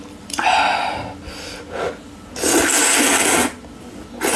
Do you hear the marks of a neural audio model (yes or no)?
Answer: no